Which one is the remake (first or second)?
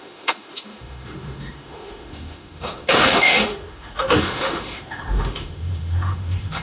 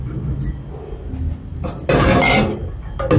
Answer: first